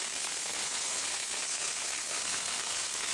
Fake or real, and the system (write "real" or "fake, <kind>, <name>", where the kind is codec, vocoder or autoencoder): fake, codec, SNAC